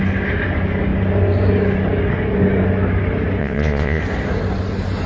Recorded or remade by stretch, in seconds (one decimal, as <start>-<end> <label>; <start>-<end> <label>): 0.0-3.4 recorded; 3.4-4.0 remade; 4.0-5.1 recorded